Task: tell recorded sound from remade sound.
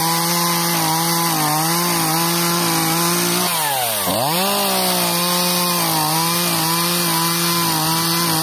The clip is recorded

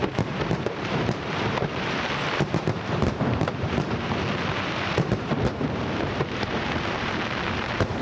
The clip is remade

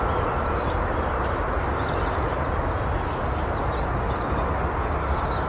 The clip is recorded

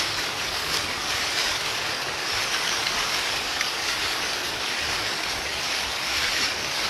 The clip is remade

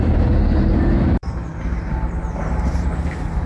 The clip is remade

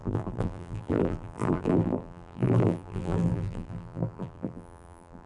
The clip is remade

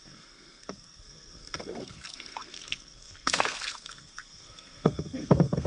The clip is remade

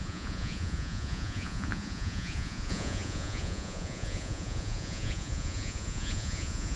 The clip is remade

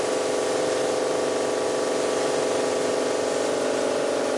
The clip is recorded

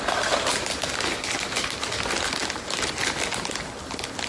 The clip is recorded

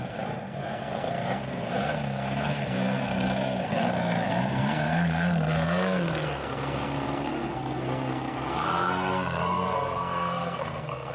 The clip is remade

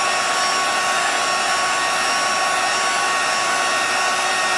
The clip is recorded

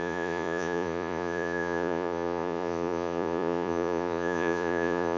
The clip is remade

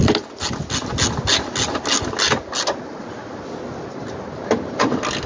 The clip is recorded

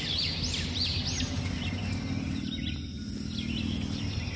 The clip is recorded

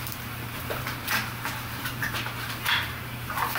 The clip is remade